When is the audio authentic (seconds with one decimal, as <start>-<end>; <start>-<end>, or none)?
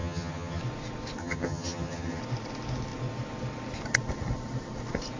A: 0.6-1.2; 2.2-5.2